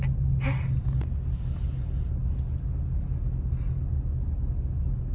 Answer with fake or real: real